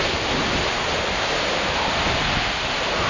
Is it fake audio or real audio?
real